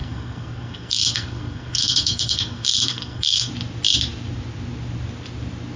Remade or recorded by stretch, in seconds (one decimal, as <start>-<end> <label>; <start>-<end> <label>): 0.0-3.5 remade; 3.5-5.8 recorded